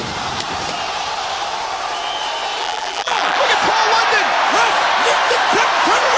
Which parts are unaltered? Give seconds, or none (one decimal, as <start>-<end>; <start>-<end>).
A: 0.0-2.6; 3.4-6.2